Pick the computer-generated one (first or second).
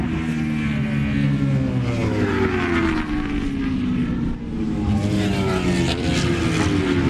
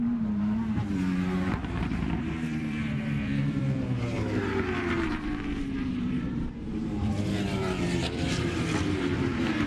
second